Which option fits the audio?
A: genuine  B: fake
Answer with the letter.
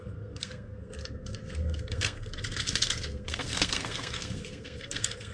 B